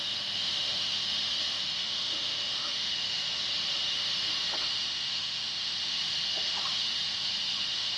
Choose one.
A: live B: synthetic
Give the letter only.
B